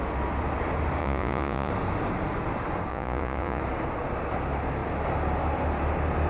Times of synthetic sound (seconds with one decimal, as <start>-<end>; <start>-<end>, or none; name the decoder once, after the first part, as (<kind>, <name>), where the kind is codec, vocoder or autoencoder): 1.0-1.7 (vocoder, Vocos); 2.9-3.6